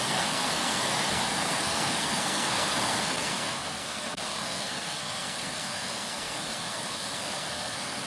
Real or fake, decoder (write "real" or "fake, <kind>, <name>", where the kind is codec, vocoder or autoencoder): fake, codec, SNAC